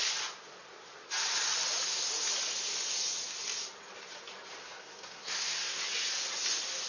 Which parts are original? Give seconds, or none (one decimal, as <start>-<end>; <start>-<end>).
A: 0.0-4.6; 5.8-6.9